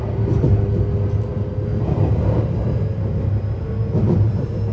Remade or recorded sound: recorded